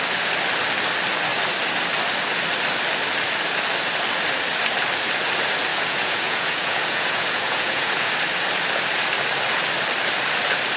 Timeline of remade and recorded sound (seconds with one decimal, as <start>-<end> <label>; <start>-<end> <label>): 0.0-5.7 recorded; 5.7-8.1 remade; 8.1-10.8 recorded